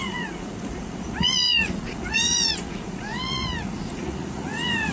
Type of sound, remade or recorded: remade